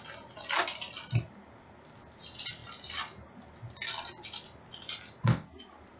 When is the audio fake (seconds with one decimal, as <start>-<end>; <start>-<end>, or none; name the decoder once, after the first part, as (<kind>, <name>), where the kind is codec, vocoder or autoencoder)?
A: none